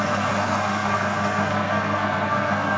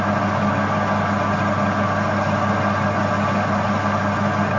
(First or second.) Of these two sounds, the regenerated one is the first